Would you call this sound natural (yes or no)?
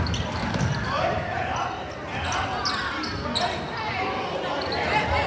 yes